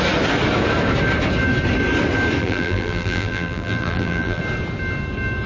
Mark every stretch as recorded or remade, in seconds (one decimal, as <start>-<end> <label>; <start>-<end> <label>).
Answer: 0.0-2.4 recorded; 2.4-4.4 remade; 4.4-5.5 recorded